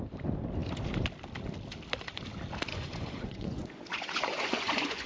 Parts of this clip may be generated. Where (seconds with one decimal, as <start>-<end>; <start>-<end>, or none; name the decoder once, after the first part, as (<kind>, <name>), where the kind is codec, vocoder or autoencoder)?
2.7-5.1 (vocoder, Vocos)